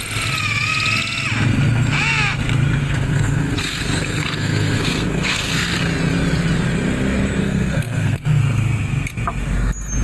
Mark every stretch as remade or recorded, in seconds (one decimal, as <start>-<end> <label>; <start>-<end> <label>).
0.0-2.8 recorded; 2.8-5.8 remade; 5.8-7.4 recorded; 7.4-8.4 remade; 8.4-10.0 recorded